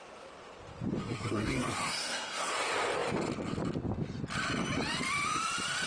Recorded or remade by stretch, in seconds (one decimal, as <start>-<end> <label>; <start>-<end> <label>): 0.0-1.0 recorded; 1.0-2.5 remade; 2.5-5.9 recorded